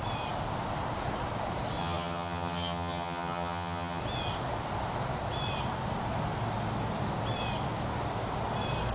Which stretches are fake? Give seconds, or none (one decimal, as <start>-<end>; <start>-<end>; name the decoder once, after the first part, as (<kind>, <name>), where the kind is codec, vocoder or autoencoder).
1.8-4.0 (vocoder, HiFi-GAN)